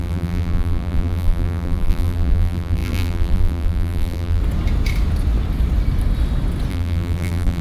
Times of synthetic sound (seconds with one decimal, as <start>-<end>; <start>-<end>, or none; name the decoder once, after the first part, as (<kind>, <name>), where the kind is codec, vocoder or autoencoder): 0.0-4.4 (vocoder, BigVGAN v2); 6.7-7.6